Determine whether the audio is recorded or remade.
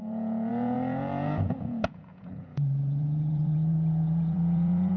remade